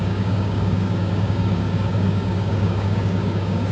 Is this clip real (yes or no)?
no